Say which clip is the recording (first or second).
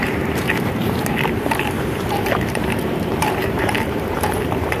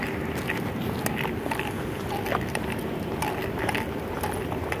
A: second